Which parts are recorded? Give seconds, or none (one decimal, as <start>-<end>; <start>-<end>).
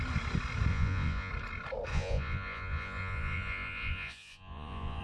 0.0-0.7; 1.3-1.9